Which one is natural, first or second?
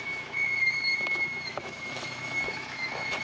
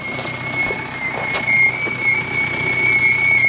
second